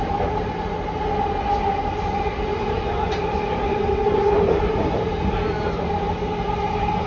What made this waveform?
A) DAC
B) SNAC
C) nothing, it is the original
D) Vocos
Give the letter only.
C